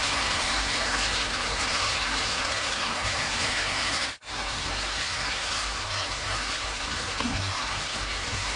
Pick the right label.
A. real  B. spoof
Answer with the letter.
B